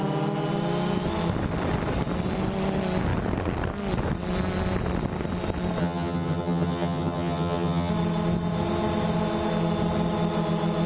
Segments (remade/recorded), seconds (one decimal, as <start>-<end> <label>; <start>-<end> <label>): 0.0-5.8 recorded; 5.8-7.9 remade; 7.9-10.9 recorded